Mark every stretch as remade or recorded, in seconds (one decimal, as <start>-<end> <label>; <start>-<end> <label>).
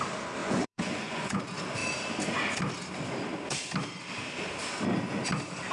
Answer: 0.0-0.4 recorded; 0.4-1.4 remade; 1.4-5.7 recorded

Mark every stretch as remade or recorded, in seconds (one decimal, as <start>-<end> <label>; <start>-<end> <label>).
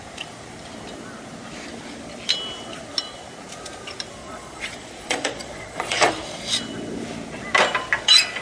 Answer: 0.0-4.2 recorded; 4.2-6.1 remade; 6.1-8.4 recorded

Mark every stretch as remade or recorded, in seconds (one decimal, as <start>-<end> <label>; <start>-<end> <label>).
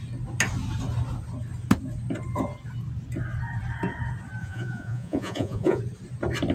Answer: 0.0-4.4 recorded; 4.4-5.8 remade; 5.8-6.5 recorded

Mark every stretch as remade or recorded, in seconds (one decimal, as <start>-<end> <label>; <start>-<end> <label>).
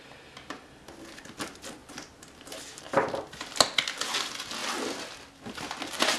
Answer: 0.0-6.2 recorded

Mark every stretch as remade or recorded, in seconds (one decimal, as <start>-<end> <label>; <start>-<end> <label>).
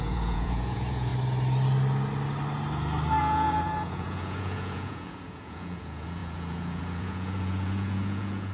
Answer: 0.0-1.1 remade; 1.1-3.2 recorded; 3.2-8.5 remade